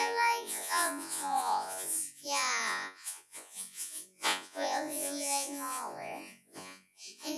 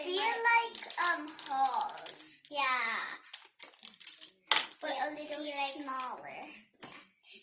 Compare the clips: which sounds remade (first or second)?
first